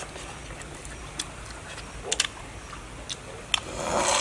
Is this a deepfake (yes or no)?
no